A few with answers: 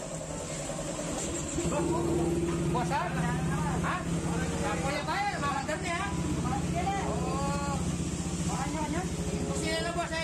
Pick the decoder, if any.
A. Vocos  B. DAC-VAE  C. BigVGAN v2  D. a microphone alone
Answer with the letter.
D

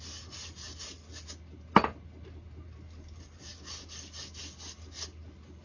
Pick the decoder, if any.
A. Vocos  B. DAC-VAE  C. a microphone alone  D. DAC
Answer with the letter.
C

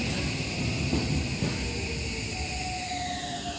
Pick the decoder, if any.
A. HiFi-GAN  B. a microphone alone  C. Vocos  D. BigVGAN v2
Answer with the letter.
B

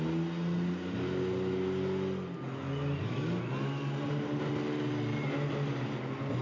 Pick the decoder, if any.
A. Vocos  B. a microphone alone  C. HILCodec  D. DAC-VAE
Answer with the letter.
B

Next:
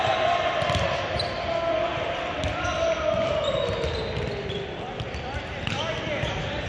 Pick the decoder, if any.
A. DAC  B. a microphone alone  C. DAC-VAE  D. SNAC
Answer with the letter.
B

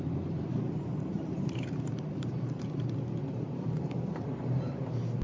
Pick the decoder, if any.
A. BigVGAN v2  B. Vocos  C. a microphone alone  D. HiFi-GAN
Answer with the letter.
A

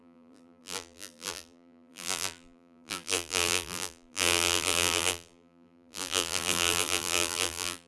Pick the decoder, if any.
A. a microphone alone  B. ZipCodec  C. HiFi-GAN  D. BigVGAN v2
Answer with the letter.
D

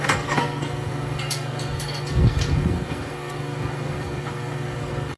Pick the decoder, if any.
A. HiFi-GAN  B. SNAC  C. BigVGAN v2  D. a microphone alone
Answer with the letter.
B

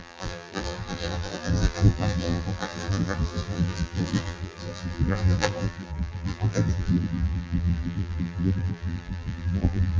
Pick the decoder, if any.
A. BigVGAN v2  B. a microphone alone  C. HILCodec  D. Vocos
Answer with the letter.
A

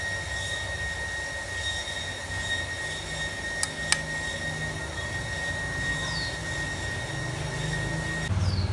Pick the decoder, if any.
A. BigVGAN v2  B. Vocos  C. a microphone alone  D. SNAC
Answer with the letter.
C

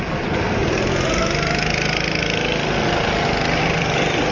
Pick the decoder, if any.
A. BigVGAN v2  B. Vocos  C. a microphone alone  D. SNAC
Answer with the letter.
C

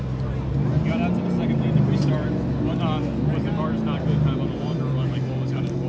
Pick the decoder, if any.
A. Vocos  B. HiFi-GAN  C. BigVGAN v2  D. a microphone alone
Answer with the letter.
D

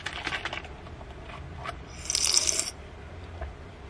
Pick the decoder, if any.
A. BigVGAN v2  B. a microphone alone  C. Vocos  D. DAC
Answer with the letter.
B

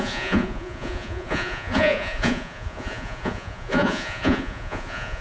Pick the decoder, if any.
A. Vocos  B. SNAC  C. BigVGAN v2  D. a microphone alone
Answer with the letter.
A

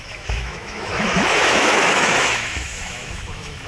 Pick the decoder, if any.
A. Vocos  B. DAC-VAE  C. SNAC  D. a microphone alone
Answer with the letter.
B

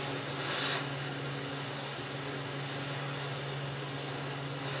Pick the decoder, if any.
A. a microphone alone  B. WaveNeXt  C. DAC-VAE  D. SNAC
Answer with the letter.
A